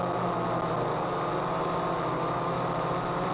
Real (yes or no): yes